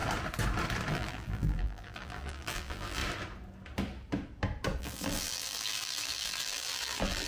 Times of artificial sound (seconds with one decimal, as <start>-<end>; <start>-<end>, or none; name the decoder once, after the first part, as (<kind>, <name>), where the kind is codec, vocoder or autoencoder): 0.9-3.0 (vocoder, BigVGAN v2); 4.8-7.3